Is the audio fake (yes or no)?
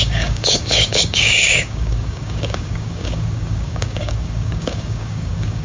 yes